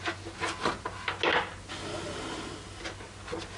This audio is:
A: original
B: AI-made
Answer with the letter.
A